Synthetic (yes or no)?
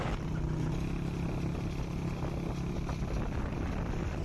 no